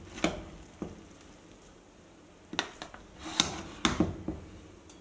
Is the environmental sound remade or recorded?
recorded